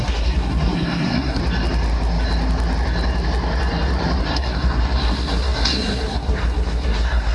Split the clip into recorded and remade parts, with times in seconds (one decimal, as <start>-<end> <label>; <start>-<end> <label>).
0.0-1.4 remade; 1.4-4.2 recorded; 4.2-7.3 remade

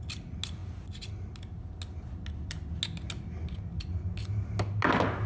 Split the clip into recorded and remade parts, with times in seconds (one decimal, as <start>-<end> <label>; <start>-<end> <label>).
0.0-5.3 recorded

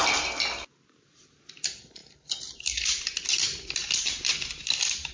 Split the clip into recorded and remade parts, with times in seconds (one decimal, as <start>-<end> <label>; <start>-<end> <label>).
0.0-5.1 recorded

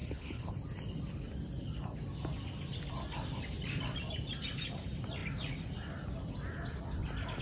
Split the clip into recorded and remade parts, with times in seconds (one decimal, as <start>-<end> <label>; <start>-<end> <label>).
0.0-0.5 remade; 0.5-7.4 recorded